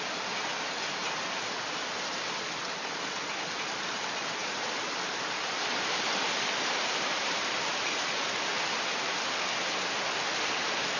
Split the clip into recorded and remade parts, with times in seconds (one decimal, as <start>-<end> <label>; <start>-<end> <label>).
0.0-4.4 recorded; 4.4-7.5 remade; 7.5-11.0 recorded